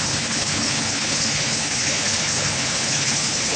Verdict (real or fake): fake